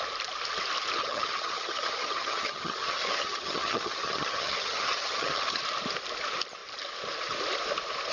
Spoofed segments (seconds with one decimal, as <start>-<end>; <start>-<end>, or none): 1.0-5.6